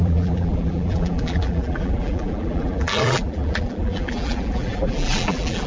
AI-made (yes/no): yes